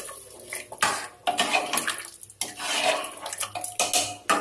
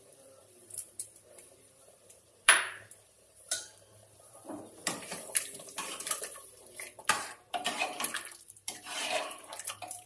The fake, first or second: second